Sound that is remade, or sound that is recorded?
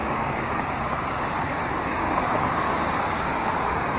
remade